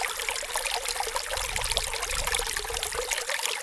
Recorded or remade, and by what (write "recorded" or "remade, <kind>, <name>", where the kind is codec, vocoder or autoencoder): recorded